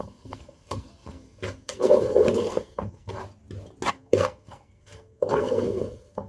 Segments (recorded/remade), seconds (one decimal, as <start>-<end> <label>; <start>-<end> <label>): 0.0-3.2 remade; 3.2-3.9 recorded; 3.9-6.3 remade